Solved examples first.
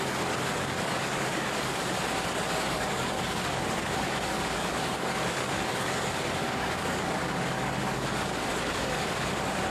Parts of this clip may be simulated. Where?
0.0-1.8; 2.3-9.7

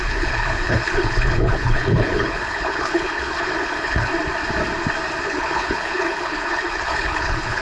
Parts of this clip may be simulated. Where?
0.0-4.1; 5.2-7.6

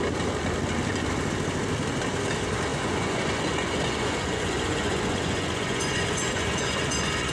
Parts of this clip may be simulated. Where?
2.7-7.3